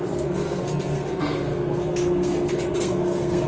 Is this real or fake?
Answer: fake